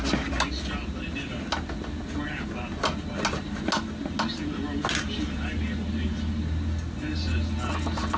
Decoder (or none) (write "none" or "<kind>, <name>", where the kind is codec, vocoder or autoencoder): none